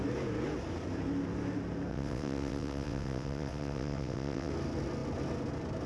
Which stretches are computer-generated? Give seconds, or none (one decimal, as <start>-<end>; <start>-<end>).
1.9-4.5